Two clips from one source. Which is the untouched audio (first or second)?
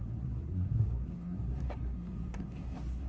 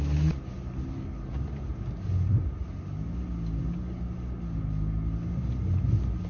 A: second